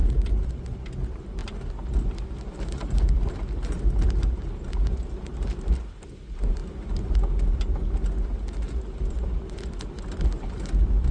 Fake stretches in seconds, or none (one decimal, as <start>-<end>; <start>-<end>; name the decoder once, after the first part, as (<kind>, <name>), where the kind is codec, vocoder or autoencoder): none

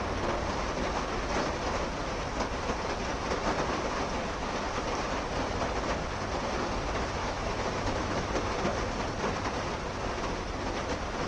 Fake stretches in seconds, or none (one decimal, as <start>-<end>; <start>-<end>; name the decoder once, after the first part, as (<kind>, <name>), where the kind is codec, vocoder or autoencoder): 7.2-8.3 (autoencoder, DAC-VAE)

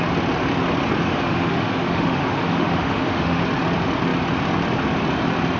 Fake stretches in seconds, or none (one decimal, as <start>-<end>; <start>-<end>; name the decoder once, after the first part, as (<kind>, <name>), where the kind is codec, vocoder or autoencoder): 1.0-3.4 (autoencoder, DAC-VAE)

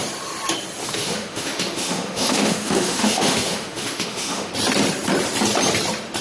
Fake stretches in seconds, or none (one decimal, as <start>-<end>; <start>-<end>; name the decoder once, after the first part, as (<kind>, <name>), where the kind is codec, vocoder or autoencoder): 0.8-4.5 (autoencoder, DAC-VAE)

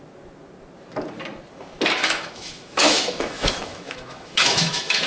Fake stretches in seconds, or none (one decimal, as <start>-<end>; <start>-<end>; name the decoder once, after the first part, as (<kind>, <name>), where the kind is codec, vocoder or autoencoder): 2.0-5.1 (autoencoder, DAC-VAE)